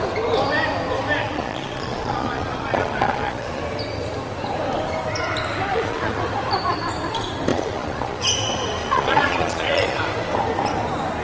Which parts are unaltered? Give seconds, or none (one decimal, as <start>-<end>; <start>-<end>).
0.0-1.2; 3.6-5.7; 6.2-7.5; 8.2-8.8; 10.0-11.2